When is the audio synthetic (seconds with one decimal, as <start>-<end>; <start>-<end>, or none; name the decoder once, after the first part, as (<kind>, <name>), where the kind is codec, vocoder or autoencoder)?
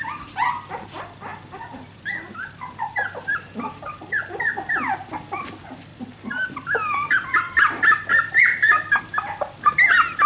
1.3-2.9 (vocoder, BigVGAN v2); 3.3-4.8; 5.9-9.0